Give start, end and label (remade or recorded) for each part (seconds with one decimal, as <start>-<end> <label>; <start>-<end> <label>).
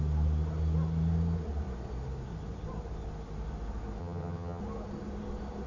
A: 0.0-4.0 recorded; 4.0-4.6 remade; 4.6-5.7 recorded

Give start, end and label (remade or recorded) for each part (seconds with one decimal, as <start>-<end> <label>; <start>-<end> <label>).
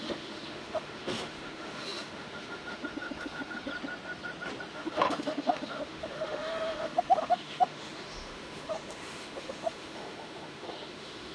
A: 0.0-3.7 remade; 3.7-4.7 recorded; 4.7-11.3 remade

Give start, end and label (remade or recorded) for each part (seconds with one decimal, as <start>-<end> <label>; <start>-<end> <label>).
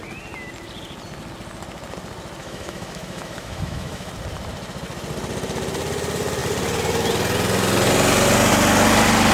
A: 0.0-2.4 recorded; 2.4-4.1 remade; 4.1-9.3 recorded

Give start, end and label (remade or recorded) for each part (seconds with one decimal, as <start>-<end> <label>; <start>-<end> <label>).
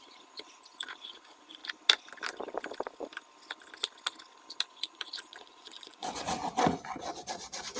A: 0.0-1.6 remade; 1.6-4.7 recorded; 4.7-6.4 remade; 6.4-7.8 recorded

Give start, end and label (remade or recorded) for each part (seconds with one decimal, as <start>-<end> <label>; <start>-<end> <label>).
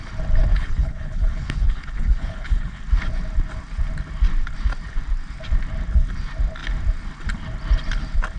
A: 0.0-0.5 recorded; 0.5-2.8 remade; 2.8-8.4 recorded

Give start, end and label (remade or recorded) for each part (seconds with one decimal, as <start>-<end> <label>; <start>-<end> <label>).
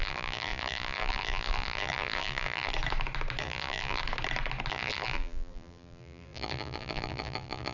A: 0.0-2.7 remade; 2.7-3.4 recorded; 3.4-4.0 remade; 4.0-4.7 recorded; 4.7-7.7 remade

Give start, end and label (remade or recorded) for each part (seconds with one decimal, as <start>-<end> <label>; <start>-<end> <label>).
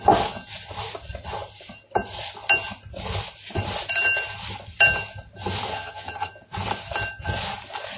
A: 0.0-5.7 recorded; 5.7-6.3 remade; 6.3-8.0 recorded